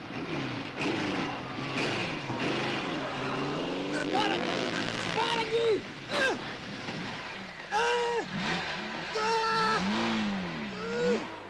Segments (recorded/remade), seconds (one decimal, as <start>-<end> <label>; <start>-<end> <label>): 0.0-4.0 recorded; 4.0-5.4 remade; 5.4-11.5 recorded